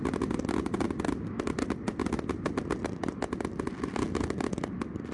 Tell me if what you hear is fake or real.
real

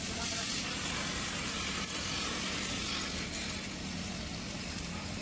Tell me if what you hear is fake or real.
real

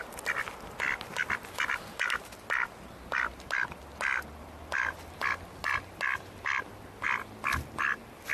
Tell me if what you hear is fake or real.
real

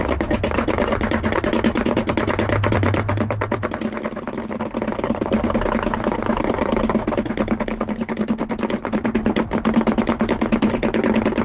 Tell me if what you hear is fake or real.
real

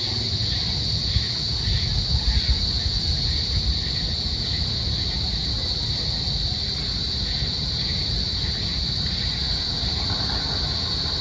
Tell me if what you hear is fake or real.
real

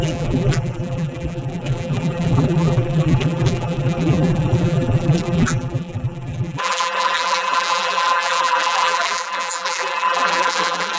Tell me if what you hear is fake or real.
fake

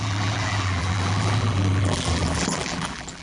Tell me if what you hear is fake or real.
fake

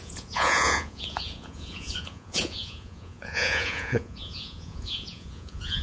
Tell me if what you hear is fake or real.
fake